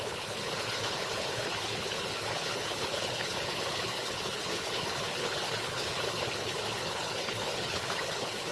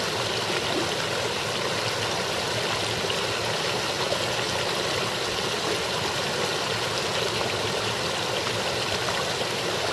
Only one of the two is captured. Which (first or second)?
second